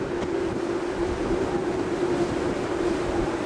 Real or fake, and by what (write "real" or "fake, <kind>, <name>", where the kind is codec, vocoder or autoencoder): real